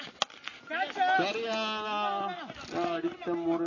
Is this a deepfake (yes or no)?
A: no